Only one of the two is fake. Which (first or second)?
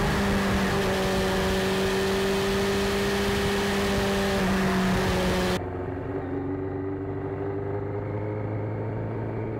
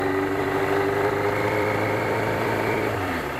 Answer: second